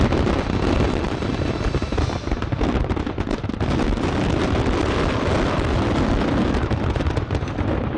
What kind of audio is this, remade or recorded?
recorded